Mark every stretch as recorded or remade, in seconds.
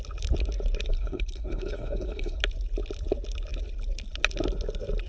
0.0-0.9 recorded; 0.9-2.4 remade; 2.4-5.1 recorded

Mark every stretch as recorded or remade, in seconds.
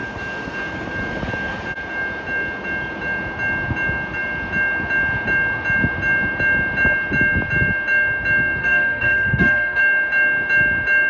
0.0-8.6 recorded; 8.6-9.8 remade; 9.8-11.1 recorded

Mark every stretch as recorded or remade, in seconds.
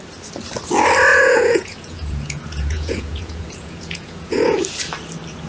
0.0-1.1 recorded; 1.1-4.4 remade; 4.4-5.5 recorded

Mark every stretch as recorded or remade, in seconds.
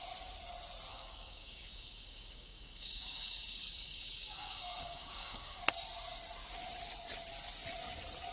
0.0-0.9 recorded; 0.9-5.6 remade; 5.6-8.3 recorded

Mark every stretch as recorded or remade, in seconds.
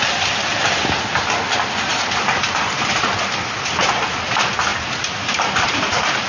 0.0-6.3 recorded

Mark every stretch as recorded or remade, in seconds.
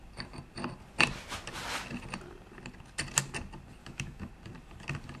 0.0-3.8 recorded; 3.8-4.3 remade; 4.3-5.2 recorded